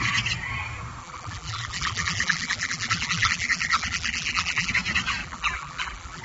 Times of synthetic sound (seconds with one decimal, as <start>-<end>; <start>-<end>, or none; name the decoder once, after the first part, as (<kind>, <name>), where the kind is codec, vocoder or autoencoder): 1.0-4.7 (vocoder, BigVGAN v2); 5.2-6.2